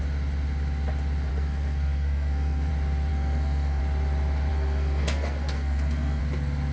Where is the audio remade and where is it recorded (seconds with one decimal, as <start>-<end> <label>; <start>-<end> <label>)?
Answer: 0.0-1.3 recorded; 1.3-2.7 remade; 2.7-3.1 recorded; 3.1-3.8 remade; 3.8-4.5 recorded; 4.5-6.2 remade; 6.2-6.7 recorded